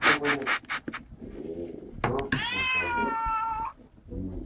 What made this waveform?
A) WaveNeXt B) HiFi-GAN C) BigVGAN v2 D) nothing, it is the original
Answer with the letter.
D